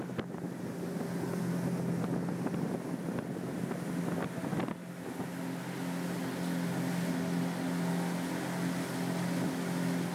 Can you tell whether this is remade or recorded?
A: recorded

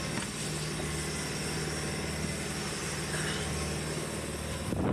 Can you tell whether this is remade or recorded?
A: recorded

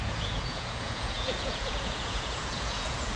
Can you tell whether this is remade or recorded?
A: remade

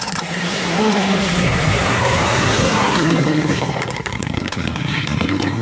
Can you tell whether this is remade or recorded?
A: remade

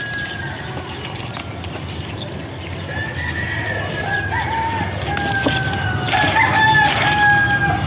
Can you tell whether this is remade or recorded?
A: recorded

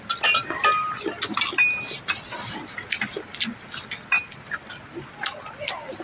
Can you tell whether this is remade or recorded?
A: recorded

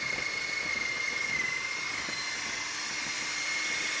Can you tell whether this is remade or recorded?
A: recorded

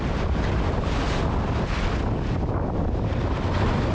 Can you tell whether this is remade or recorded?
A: recorded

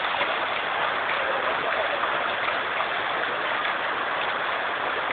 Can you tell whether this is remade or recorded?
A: recorded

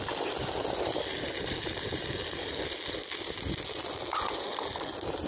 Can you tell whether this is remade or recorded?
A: recorded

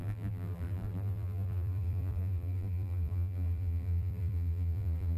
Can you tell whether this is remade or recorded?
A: remade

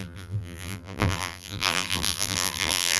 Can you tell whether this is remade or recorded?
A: remade